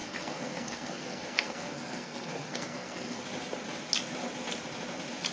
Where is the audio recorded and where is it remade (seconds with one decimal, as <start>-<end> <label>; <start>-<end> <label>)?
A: 0.0-3.2 remade; 3.2-5.3 recorded

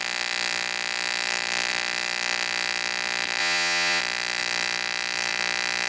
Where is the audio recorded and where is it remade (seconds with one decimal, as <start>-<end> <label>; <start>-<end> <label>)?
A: 0.0-3.4 recorded; 3.4-4.0 remade; 4.0-5.9 recorded

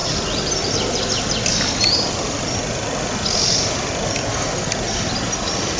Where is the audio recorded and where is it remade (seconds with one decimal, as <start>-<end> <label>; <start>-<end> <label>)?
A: 0.0-5.8 recorded

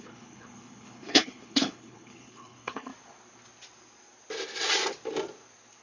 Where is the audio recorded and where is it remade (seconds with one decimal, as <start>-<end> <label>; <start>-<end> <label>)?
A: 0.0-2.9 remade; 2.9-5.8 recorded

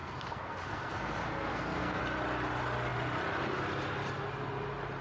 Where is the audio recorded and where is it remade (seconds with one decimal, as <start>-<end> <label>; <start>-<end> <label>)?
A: 0.0-2.0 remade; 2.0-5.0 recorded

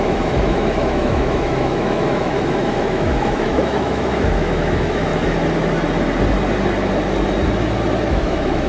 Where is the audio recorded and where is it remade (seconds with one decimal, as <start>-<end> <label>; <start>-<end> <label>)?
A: 0.0-5.1 remade; 5.1-8.1 recorded; 8.1-8.7 remade